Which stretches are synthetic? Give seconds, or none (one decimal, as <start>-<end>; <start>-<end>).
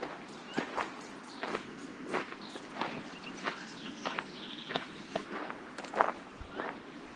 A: 1.5-2.4; 3.4-5.5